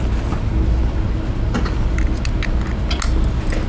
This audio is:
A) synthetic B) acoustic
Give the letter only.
B